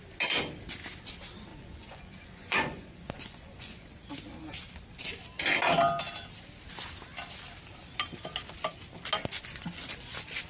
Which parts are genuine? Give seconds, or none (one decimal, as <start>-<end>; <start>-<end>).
0.0-1.5; 3.9-9.2; 9.8-10.5

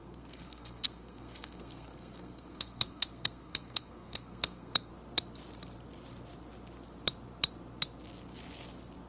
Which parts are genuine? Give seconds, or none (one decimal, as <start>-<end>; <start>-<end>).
4.9-9.1